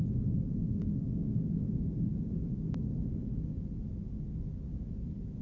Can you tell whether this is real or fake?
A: real